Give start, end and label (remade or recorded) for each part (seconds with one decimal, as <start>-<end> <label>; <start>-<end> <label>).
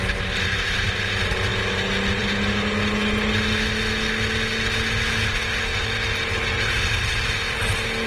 0.0-8.1 recorded